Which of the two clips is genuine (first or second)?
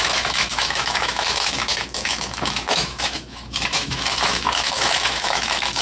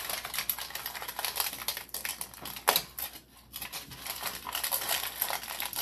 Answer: second